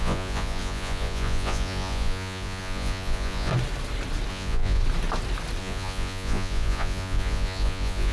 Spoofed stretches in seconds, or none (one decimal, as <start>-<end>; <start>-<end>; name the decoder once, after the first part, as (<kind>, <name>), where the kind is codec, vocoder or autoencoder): 0.0-3.5 (vocoder, Vocos); 4.3-4.8; 5.6-8.1